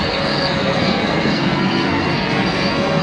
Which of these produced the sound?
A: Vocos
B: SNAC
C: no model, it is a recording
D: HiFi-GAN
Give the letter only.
B